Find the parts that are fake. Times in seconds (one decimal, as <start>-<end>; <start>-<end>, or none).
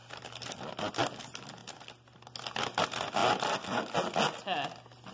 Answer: none